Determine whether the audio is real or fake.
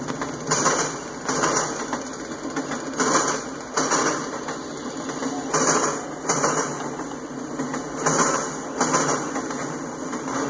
real